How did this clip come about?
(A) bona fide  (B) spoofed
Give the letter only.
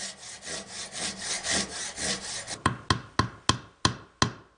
A